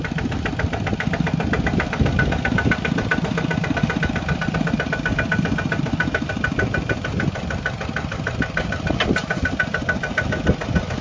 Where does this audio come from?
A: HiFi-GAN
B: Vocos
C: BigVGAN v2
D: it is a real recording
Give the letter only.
D